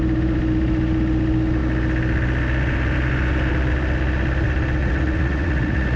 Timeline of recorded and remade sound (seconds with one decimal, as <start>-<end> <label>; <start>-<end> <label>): 0.0-4.8 recorded; 4.8-6.0 remade